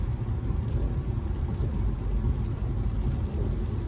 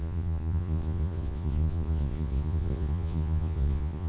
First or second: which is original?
first